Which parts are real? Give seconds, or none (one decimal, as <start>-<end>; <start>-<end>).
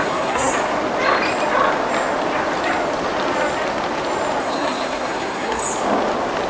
0.5-4.4; 5.6-6.5